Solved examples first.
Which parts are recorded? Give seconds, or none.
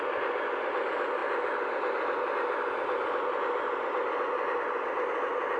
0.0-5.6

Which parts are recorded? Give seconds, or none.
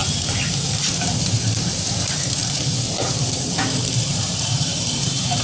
none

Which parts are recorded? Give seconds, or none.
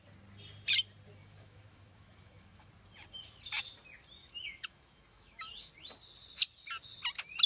0.0-1.2; 2.7-4.2; 5.7-7.5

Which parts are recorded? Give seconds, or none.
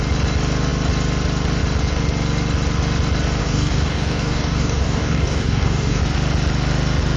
0.0-3.4; 6.0-7.2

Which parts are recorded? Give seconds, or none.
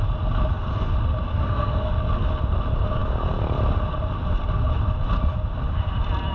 0.0-1.3; 1.9-6.3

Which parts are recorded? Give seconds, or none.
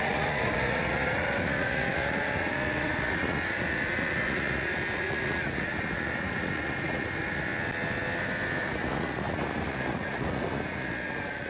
7.5-8.6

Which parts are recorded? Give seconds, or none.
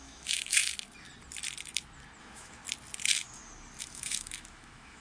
0.6-2.2; 2.6-3.8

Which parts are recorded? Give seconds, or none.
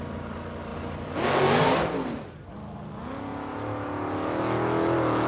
0.0-5.3